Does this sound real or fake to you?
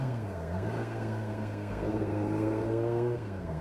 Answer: fake